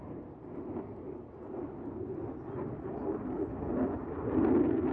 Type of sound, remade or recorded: recorded